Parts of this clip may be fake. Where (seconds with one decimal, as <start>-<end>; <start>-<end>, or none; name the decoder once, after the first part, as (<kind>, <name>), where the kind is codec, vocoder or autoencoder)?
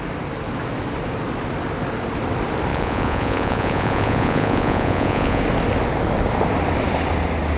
2.7-5.4 (vocoder, Vocos)